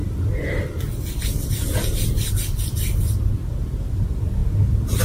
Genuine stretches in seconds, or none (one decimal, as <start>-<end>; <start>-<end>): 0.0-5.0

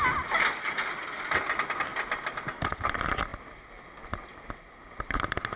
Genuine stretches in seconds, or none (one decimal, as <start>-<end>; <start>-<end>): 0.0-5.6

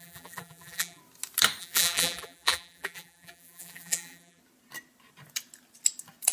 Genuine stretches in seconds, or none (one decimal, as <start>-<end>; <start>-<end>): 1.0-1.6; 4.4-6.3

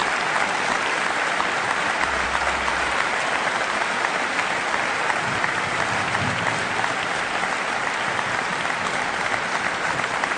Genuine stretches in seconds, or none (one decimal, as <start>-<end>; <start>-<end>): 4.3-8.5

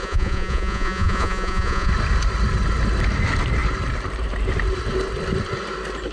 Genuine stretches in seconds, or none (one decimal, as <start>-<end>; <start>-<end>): 1.9-6.1

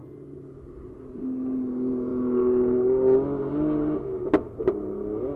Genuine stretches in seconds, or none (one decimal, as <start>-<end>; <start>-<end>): 0.0-5.4